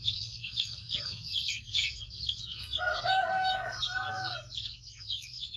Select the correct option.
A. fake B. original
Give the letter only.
A